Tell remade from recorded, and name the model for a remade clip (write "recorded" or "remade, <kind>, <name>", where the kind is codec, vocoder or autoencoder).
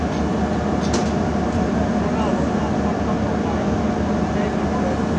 recorded